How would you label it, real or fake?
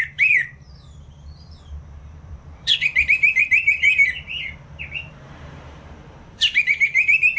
fake